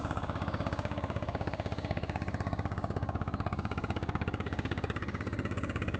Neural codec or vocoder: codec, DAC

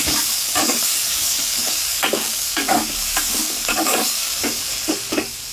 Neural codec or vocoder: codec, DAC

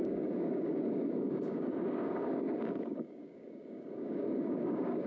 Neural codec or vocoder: codec, DAC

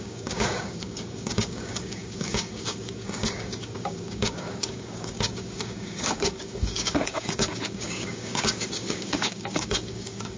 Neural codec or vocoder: codec, DAC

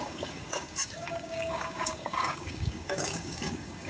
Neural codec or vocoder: codec, DAC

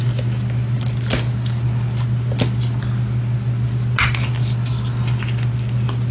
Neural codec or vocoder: none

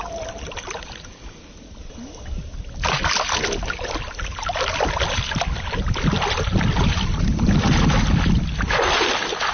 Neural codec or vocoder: none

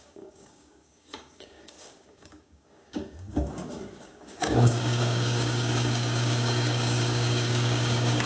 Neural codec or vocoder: codec, DAC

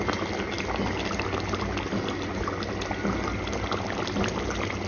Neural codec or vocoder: none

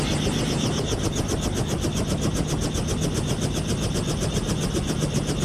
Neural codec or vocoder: none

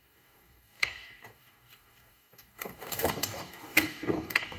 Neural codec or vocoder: codec, DAC